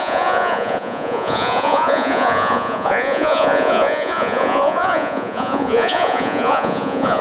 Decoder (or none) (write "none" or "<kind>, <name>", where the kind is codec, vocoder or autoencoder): vocoder, Vocos